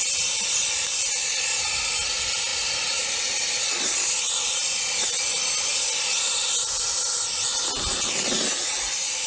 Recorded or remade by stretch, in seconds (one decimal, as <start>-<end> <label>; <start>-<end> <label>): 0.0-9.3 recorded